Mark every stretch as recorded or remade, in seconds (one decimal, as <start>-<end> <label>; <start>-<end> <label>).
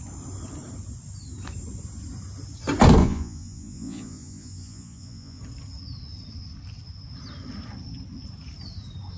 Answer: 0.0-3.0 recorded; 3.0-5.4 remade; 5.4-9.2 recorded